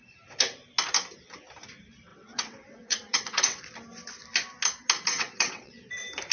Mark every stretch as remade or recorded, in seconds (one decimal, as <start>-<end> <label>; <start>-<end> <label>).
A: 0.0-2.1 recorded; 2.1-3.6 remade; 3.6-5.1 recorded; 5.1-5.7 remade; 5.7-6.3 recorded